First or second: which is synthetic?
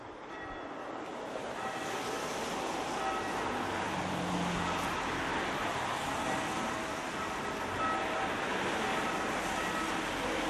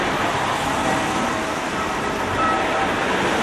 second